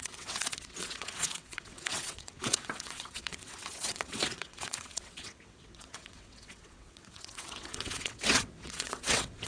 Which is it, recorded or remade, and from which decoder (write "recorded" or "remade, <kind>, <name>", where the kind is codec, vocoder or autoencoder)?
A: remade, vocoder, WaveNeXt